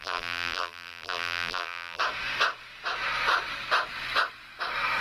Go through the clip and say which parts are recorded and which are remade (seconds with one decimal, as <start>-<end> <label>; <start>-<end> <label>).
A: 0.0-2.0 remade; 2.0-5.0 recorded